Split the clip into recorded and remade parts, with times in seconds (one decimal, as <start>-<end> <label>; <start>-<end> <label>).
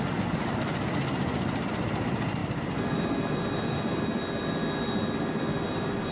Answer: 0.0-2.4 recorded; 2.4-4.0 remade; 4.0-6.1 recorded